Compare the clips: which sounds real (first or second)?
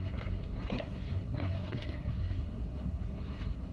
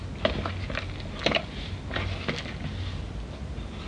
second